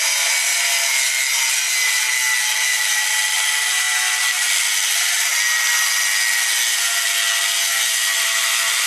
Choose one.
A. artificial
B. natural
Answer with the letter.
B